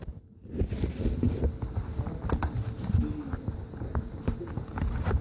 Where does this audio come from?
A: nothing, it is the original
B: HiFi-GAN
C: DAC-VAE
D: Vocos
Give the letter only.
A